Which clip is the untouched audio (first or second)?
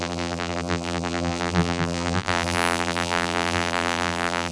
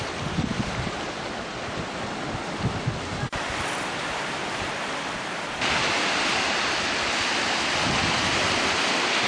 second